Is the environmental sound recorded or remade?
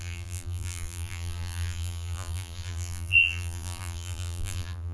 remade